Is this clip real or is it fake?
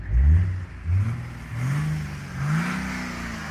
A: real